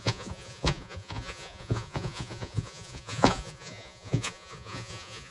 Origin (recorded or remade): remade